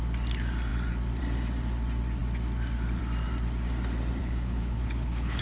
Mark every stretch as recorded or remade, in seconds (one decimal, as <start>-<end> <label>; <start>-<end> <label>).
0.0-4.2 recorded; 4.2-5.4 remade